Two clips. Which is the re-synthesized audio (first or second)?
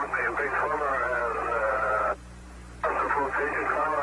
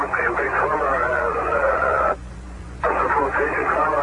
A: second